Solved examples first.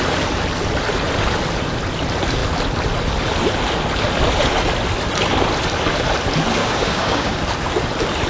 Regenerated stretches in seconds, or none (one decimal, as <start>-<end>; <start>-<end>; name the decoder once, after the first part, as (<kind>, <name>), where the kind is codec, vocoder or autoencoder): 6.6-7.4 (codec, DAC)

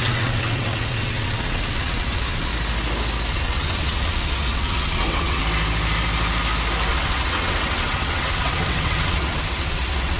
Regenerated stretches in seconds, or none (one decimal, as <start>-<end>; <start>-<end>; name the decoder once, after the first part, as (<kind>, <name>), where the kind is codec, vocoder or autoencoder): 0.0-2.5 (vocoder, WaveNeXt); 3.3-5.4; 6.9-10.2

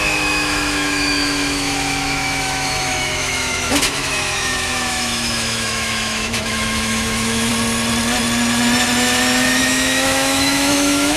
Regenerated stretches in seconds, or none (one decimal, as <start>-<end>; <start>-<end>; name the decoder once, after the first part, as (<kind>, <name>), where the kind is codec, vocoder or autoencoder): 0.0-7.5 (autoencoder, DAC-VAE); 9.6-11.2

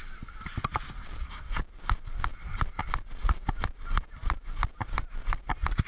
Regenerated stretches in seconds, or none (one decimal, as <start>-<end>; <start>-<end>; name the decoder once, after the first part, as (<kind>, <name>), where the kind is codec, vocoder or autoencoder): none

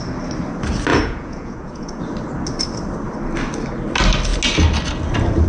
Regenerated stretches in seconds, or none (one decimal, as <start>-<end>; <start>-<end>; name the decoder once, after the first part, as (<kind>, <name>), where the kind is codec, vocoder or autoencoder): 0.9-2.0 (vocoder, Vocos)

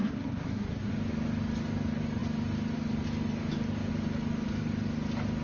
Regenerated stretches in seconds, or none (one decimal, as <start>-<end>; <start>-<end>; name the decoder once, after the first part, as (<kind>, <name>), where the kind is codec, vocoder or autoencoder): 0.0-0.9 (codec, SNAC)

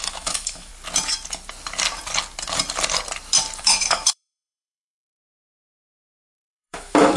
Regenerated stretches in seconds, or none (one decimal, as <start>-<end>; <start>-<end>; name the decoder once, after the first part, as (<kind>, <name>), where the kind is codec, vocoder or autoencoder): 0.0-0.7 (autoencoder, DAC-VAE); 3.6-7.2